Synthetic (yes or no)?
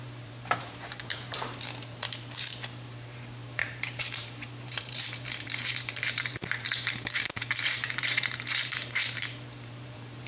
yes